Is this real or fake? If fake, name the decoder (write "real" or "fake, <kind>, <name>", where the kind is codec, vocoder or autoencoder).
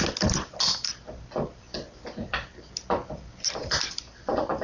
real